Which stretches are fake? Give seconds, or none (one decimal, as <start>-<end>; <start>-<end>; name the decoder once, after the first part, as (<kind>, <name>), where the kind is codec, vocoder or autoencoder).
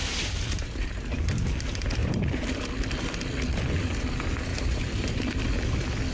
0.0-0.7 (vocoder, BigVGAN v2); 2.0-2.6; 4.5-5.4